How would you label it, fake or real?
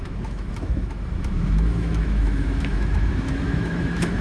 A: fake